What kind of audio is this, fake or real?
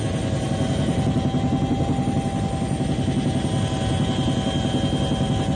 real